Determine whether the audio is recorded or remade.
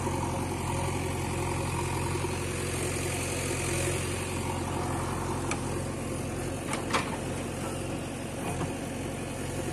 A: recorded